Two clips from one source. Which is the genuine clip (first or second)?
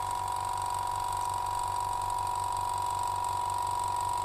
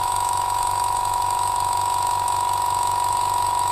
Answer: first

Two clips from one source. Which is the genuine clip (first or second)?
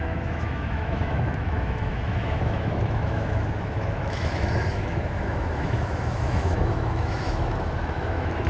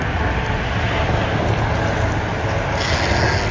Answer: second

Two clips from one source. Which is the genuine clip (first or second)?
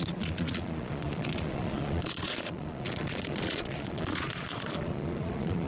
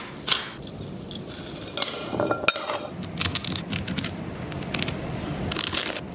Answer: second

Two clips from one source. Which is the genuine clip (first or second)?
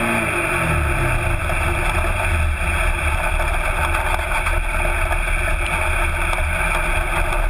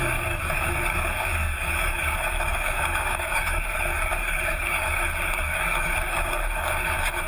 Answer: first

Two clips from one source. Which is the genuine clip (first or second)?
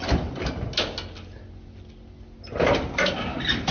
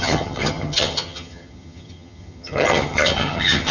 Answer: first